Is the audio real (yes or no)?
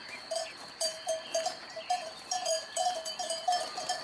no